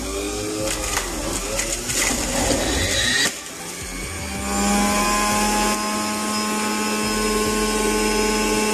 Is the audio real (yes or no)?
yes